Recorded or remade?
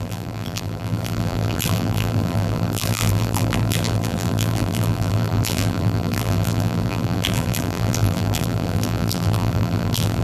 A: remade